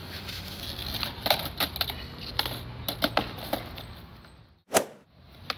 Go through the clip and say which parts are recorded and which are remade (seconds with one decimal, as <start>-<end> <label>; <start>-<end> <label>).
0.0-0.6 remade; 0.6-5.6 recorded